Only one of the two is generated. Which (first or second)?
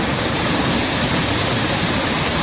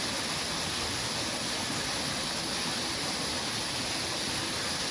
first